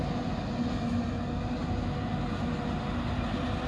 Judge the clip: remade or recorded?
recorded